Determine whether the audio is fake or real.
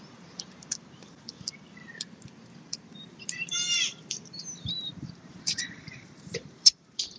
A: fake